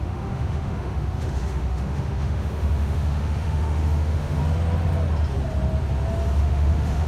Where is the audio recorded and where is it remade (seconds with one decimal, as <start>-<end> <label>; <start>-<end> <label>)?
0.0-4.4 remade; 4.4-6.4 recorded; 6.4-7.1 remade